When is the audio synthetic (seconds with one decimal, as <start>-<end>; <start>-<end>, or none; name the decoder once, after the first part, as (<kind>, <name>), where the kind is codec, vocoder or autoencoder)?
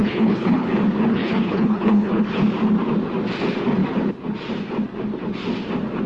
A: 0.0-0.7 (codec, HILCodec); 1.1-2.4